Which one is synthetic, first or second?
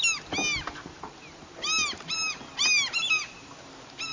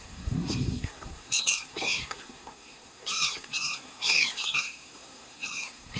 second